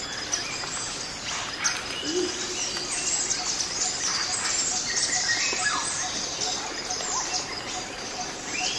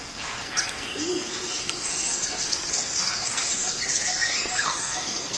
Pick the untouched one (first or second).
first